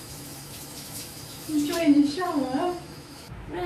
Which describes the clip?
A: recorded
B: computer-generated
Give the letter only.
B